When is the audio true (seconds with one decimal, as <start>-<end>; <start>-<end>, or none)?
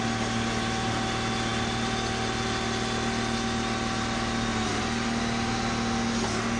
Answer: 0.0-6.6